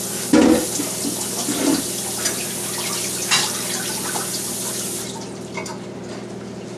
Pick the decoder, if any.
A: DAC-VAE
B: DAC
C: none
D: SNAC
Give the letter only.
C